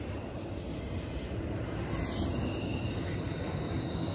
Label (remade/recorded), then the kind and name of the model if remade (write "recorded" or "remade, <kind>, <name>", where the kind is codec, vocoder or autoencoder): recorded